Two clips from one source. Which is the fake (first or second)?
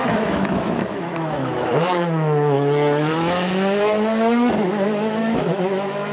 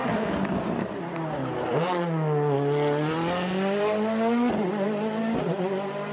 first